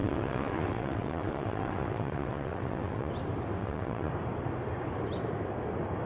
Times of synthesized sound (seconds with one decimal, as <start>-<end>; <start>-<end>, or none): 0.0-3.1; 3.6-4.1